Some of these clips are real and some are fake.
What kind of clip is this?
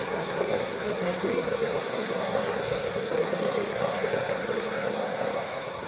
fake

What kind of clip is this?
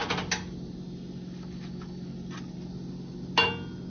real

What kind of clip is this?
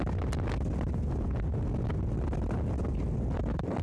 real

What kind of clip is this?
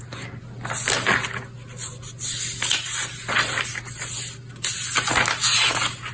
real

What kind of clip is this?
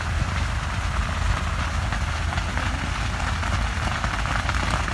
real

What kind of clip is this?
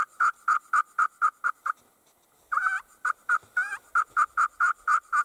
real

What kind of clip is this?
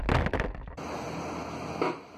real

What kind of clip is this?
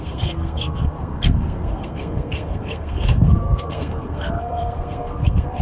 fake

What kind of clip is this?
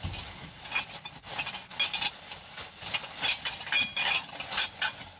real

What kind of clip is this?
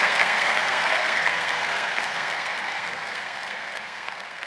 fake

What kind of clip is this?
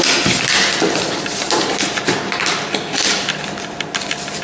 real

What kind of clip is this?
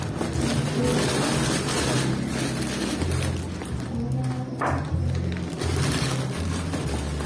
real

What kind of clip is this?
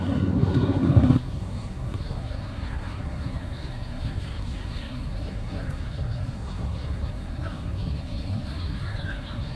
fake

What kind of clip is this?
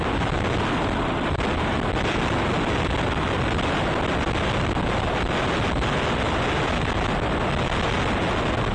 real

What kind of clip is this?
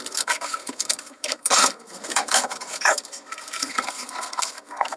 fake